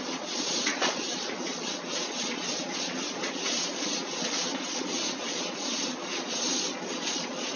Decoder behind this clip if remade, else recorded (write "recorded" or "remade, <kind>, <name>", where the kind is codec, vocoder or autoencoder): remade, vocoder, Vocos